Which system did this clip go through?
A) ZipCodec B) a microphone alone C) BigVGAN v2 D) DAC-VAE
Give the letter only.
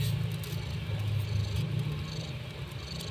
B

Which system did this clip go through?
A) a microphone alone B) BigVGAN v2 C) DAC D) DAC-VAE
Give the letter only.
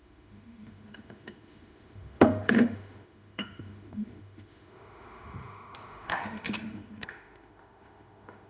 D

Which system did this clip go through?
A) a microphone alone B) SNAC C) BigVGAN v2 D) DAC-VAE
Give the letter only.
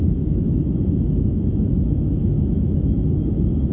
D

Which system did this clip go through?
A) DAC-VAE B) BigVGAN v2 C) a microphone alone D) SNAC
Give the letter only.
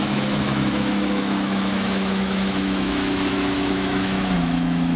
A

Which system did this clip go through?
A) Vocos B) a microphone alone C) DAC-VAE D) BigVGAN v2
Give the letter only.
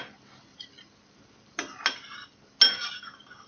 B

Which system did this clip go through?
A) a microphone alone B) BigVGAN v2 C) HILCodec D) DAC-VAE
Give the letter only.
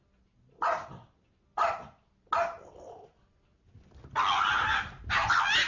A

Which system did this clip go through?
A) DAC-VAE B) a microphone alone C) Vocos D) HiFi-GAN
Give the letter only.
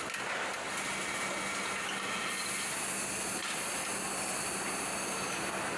B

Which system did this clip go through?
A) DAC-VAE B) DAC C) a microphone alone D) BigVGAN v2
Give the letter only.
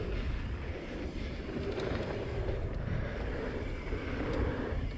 C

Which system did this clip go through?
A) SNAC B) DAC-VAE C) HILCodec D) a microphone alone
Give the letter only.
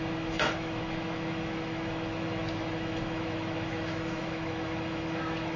B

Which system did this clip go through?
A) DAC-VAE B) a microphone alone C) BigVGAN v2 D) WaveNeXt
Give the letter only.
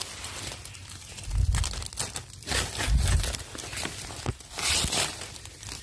B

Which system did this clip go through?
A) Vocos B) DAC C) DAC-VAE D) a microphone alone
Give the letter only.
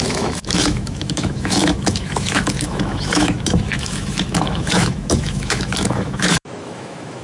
C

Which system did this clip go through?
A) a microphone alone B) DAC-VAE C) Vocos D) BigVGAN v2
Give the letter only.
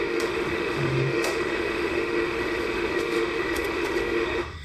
B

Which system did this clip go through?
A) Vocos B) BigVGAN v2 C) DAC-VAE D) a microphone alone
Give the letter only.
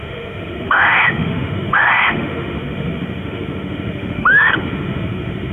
C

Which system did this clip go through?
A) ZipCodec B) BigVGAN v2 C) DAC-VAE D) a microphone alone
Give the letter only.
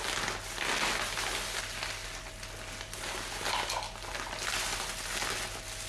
D